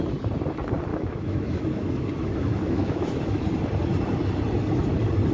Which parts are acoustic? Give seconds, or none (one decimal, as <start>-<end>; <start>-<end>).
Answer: 0.0-0.9; 3.4-5.3